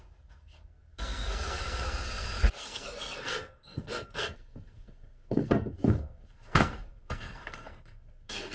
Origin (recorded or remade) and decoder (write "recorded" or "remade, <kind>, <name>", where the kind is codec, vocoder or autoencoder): remade, codec, SNAC